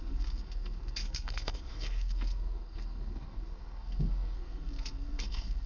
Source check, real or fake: fake